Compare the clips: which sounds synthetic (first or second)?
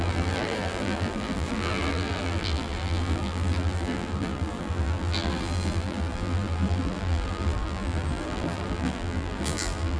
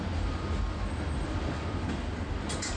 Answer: first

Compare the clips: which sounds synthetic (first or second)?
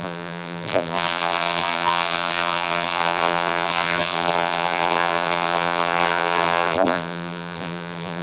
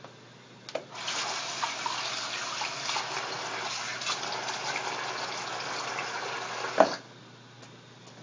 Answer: first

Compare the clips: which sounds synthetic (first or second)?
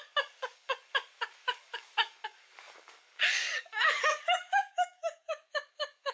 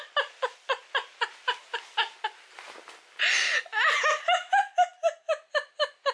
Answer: first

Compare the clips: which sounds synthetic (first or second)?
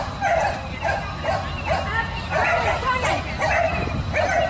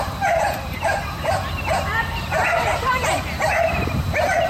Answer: second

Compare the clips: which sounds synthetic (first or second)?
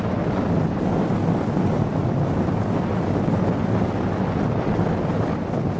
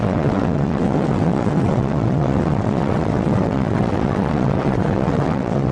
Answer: second